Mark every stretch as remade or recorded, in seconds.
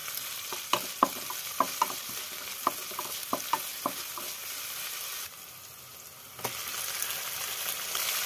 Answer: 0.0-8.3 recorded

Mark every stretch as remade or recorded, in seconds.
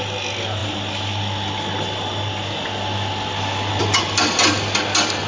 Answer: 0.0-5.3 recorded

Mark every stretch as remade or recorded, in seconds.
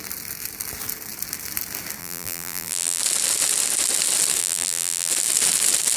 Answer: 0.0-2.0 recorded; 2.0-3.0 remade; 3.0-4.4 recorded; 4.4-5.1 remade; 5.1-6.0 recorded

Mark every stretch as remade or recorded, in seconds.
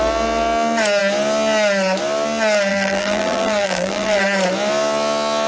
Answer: 0.0-2.7 recorded; 2.7-4.2 remade; 4.2-5.5 recorded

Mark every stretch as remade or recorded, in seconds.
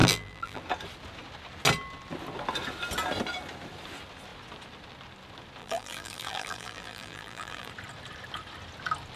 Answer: 0.0-0.6 remade; 0.6-5.6 recorded; 5.6-7.7 remade; 7.7-9.2 recorded